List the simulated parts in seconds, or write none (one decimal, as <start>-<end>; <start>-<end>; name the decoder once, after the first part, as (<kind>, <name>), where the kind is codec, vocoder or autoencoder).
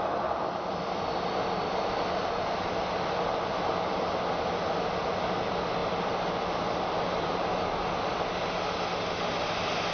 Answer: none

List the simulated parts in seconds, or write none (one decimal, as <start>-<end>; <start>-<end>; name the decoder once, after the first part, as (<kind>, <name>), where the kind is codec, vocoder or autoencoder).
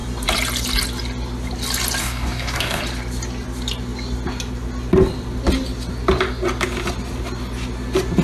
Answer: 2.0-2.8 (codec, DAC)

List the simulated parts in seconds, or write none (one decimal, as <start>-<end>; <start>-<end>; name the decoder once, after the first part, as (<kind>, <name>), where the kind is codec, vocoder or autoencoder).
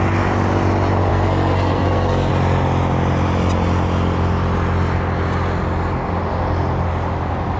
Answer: 1.1-2.3 (codec, SNAC)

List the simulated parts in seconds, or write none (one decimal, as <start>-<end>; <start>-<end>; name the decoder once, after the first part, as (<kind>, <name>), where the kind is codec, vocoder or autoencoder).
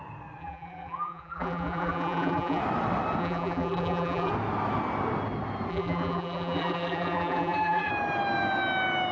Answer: 0.4-2.6 (vocoder, BigVGAN v2); 3.2-4.3; 5.7-7.9